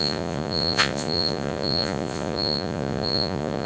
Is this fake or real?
fake